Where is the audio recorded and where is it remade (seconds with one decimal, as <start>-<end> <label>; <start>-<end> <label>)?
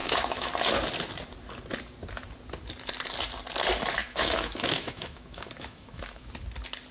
0.0-0.5 remade; 0.5-4.0 recorded; 4.0-6.3 remade; 6.3-6.9 recorded